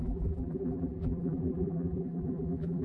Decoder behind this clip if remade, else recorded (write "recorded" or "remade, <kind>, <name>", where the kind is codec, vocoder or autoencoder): remade, vocoder, BigVGAN v2